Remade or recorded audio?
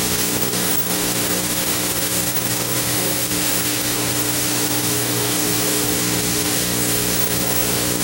remade